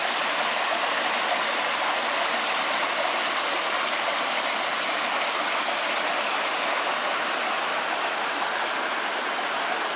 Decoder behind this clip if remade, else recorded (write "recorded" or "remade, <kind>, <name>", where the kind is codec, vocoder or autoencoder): recorded